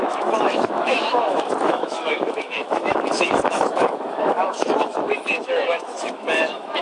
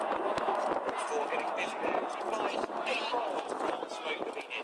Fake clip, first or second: first